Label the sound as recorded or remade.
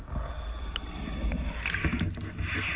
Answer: recorded